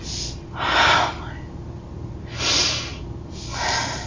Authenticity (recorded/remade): recorded